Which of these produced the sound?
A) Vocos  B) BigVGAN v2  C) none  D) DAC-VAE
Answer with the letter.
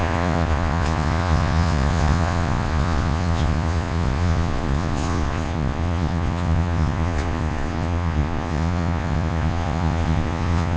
A